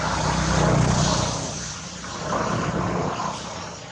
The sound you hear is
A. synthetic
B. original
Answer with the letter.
B